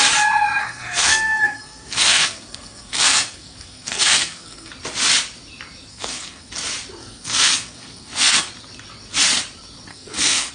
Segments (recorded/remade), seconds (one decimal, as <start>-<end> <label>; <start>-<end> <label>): 0.0-0.6 recorded; 0.6-4.7 remade; 4.7-5.9 recorded; 5.9-6.5 remade; 6.5-7.0 recorded; 7.0-8.5 remade; 8.5-9.9 recorded; 9.9-10.5 remade